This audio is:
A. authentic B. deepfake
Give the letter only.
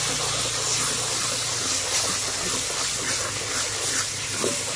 A